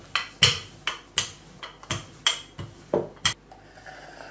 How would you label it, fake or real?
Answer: real